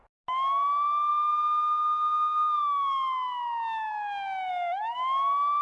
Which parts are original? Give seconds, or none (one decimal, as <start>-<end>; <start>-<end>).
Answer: 0.0-5.6

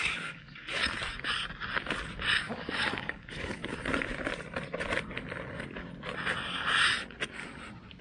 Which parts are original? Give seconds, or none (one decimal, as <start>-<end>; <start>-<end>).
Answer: 0.8-2.4; 3.6-8.0